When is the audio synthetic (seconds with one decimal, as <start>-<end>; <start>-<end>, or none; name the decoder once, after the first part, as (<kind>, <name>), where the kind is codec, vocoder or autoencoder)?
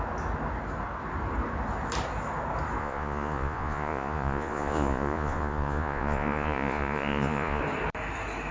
2.8-7.6 (vocoder, Vocos)